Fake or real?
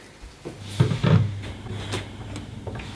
real